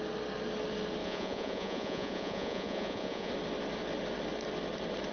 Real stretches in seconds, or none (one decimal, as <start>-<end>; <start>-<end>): 0.0-1.0; 3.3-5.1